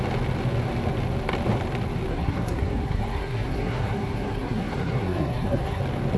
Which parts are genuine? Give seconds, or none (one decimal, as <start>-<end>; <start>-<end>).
0.0-2.1; 5.8-6.2